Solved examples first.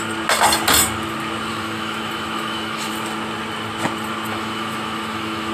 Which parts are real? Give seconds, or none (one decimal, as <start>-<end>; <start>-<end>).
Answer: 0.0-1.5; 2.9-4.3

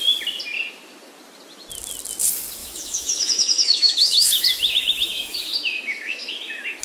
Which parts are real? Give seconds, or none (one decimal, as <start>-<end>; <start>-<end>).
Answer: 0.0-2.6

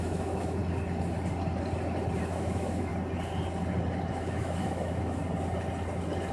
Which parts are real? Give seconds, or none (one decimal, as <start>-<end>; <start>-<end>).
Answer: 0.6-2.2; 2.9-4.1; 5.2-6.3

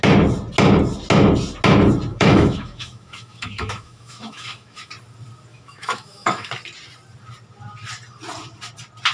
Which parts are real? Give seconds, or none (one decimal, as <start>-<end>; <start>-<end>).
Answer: 0.0-2.1; 4.9-5.5; 6.5-9.1

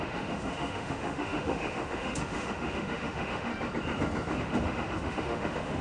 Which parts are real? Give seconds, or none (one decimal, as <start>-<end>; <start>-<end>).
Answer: 3.5-4.4